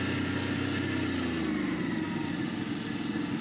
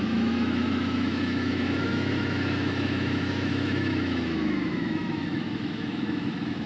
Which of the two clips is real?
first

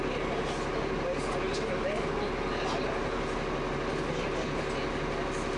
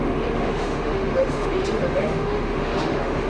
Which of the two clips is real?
first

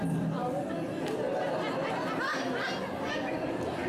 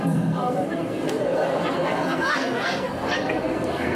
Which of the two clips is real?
first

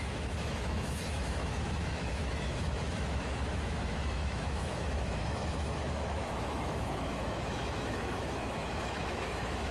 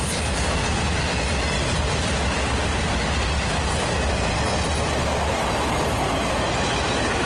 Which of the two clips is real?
second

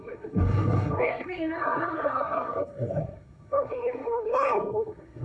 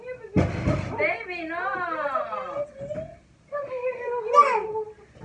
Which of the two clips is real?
second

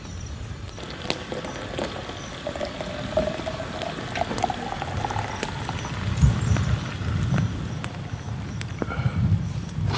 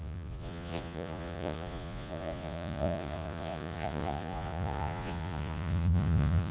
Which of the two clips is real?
first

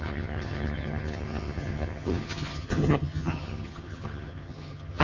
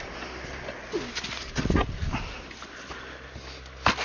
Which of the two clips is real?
second